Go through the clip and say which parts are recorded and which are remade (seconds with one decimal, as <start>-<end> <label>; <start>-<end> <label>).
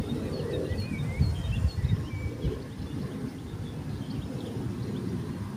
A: 0.0-5.6 recorded